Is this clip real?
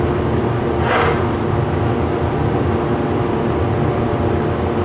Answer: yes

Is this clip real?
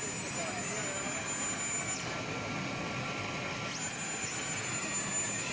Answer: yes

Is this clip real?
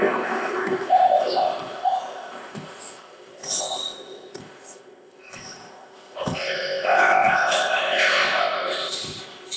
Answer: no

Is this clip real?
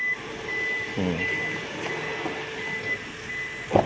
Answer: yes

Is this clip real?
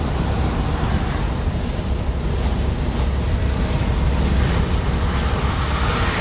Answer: yes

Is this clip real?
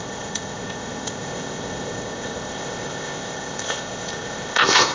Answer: no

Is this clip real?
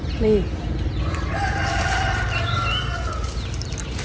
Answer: yes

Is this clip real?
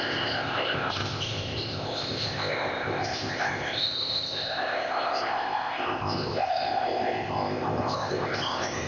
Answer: no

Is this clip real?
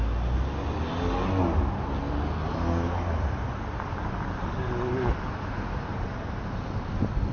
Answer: yes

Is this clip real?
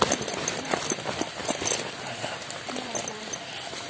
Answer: yes